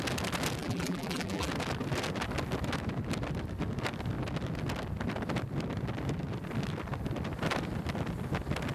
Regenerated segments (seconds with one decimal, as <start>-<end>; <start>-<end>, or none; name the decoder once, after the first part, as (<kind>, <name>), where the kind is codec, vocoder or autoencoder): 0.6-1.5 (vocoder, BigVGAN v2)